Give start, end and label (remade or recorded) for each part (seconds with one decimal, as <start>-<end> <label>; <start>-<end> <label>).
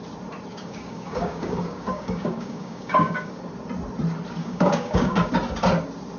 0.0-0.5 recorded; 0.5-3.4 remade; 3.4-4.4 recorded; 4.4-5.3 remade; 5.3-6.2 recorded